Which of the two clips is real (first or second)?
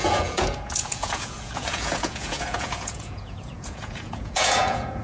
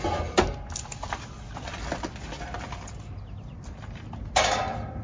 second